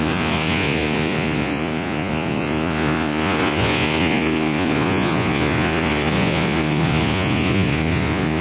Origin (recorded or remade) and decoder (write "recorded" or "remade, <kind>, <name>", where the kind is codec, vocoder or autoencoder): remade, vocoder, Vocos